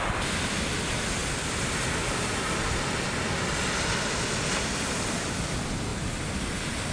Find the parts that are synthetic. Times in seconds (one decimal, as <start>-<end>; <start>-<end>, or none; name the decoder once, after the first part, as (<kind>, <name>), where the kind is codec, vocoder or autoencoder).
none

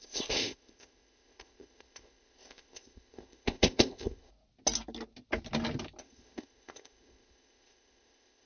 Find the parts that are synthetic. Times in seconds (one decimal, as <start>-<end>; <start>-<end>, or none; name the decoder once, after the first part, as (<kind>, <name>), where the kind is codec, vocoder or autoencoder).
0.0-4.3 (codec, ZipCodec); 6.0-8.5

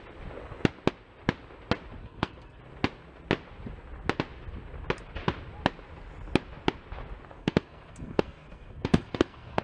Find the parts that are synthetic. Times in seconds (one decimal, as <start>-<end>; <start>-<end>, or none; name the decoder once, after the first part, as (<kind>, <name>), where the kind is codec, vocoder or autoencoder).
2.0-2.6 (codec, SNAC); 7.4-9.6

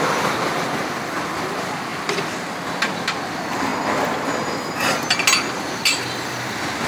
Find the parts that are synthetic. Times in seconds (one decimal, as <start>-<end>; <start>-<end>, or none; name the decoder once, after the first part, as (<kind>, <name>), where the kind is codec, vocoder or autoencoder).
0.0-3.7 (vocoder, BigVGAN v2); 5.7-6.9

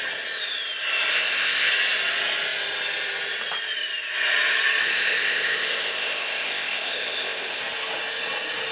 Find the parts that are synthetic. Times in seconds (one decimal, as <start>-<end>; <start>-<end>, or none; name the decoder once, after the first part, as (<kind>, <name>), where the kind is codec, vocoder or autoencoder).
1.1-1.7 (codec, ZipCodec); 4.8-7.6

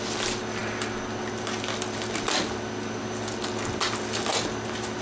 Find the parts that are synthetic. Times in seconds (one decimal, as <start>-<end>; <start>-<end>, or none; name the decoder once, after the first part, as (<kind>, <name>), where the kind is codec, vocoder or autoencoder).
none